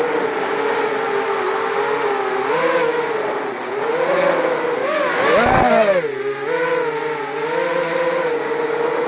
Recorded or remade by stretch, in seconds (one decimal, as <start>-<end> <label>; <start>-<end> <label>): 0.0-9.1 recorded